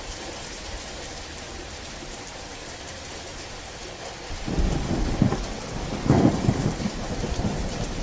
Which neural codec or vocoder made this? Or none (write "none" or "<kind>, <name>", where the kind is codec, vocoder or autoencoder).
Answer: none